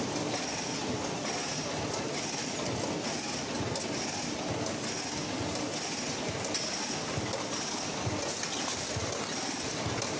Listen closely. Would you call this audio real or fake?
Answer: real